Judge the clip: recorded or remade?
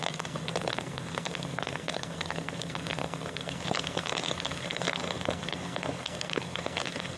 remade